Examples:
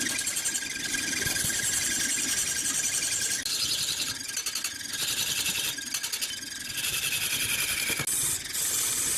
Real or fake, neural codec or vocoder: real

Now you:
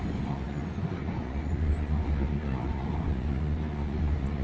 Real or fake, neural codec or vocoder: fake, vocoder, Vocos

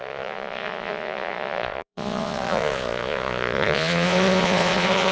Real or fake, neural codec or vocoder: fake, vocoder, Vocos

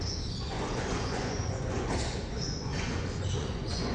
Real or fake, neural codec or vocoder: fake, vocoder, Vocos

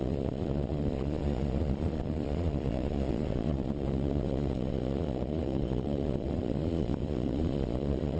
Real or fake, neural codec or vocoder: fake, vocoder, Vocos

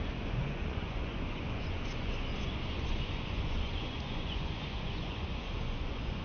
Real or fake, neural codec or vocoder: fake, vocoder, Vocos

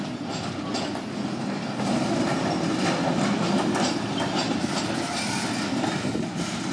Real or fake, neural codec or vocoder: real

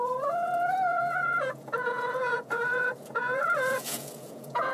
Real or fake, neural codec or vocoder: fake, vocoder, Vocos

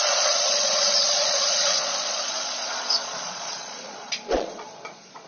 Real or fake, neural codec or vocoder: fake, vocoder, Vocos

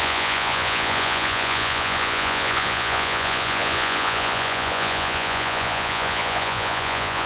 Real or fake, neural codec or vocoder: fake, vocoder, Vocos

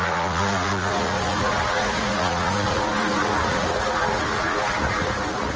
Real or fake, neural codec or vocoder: fake, vocoder, Vocos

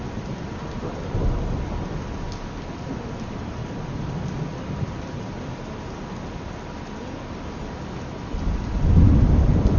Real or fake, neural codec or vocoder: real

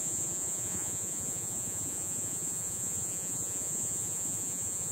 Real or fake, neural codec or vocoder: fake, vocoder, Vocos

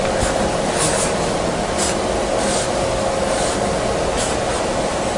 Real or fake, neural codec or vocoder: real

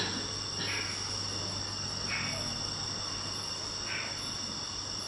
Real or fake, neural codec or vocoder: real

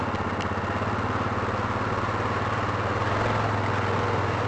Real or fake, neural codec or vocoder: real